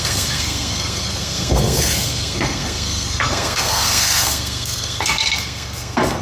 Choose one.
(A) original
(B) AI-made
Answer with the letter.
B